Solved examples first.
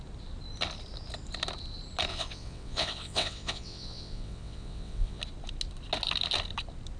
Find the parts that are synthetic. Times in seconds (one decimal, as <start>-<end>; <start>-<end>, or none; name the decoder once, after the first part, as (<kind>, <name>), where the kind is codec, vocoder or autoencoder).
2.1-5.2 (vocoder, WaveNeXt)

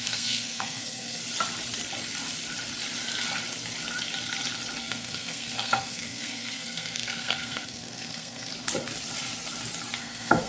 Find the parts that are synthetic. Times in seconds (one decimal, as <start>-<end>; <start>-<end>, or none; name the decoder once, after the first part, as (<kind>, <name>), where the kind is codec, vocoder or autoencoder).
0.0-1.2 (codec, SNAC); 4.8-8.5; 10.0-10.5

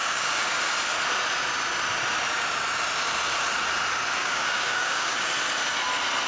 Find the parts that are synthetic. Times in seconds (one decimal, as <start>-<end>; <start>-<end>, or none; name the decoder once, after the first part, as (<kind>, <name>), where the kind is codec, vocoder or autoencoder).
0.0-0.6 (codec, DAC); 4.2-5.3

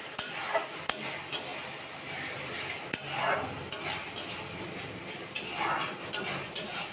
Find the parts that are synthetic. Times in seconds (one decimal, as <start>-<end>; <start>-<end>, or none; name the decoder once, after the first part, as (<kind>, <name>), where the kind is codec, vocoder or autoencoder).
1.5-2.6 (vocoder, BigVGAN v2)

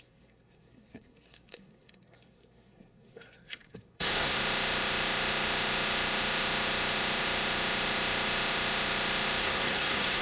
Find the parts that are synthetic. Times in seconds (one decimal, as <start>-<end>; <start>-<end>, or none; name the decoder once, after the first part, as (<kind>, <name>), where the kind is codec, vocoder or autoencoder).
0.0-4.4 (codec, SNAC); 9.4-10.2

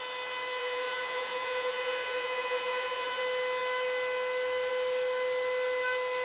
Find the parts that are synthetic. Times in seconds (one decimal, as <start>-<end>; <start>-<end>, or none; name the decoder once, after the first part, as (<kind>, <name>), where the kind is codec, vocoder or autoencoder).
0.6-3.2 (vocoder, Vocos)